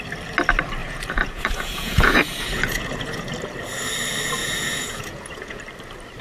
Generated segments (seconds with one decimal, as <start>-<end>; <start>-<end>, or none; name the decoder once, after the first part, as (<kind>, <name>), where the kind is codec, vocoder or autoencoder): 0.8-3.3 (vocoder, Vocos); 4.4-5.6